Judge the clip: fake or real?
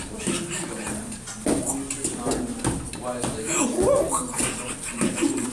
real